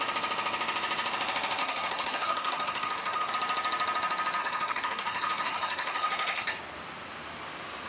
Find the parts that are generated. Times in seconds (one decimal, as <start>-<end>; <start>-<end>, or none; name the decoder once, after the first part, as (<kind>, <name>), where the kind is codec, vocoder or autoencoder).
1.6-3.3 (codec, SNAC); 4.4-6.6